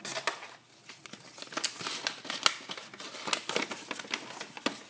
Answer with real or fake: real